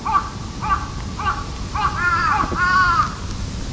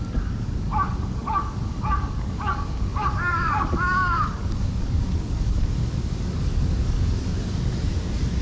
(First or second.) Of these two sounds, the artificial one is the second